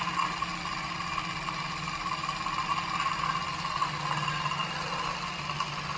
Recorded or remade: recorded